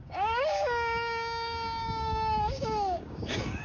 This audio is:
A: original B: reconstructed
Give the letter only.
B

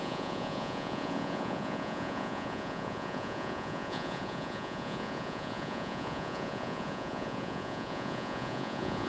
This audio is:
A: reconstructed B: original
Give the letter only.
A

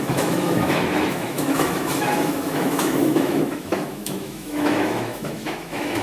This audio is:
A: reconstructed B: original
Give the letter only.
A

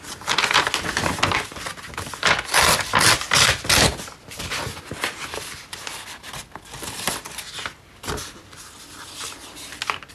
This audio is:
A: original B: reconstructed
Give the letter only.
A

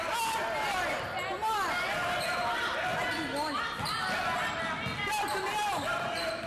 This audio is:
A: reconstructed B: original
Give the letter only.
B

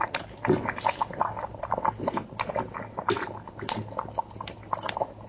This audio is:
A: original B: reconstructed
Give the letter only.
A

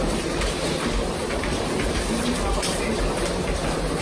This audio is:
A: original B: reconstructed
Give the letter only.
B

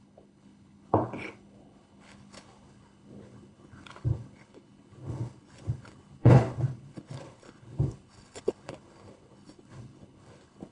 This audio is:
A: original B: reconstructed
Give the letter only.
B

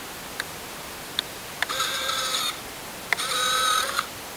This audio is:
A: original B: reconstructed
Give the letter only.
B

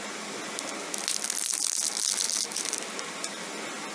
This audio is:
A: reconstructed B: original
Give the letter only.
B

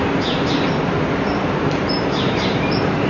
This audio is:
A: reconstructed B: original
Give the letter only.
A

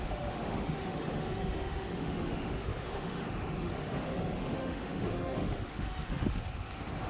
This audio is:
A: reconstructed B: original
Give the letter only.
A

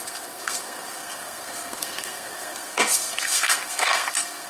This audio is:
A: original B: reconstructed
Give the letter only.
B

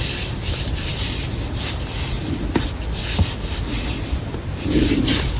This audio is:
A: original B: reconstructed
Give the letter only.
A